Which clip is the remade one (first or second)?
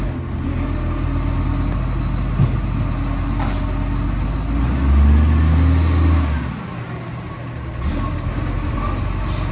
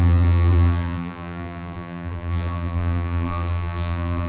second